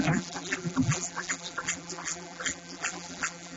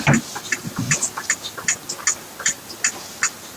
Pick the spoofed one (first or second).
first